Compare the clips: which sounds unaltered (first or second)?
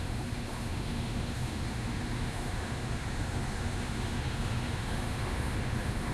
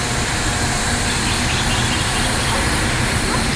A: second